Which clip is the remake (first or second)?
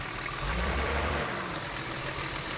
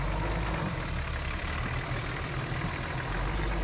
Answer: first